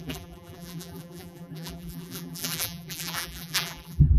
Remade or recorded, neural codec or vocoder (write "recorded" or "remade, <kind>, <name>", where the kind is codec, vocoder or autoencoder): remade, vocoder, BigVGAN v2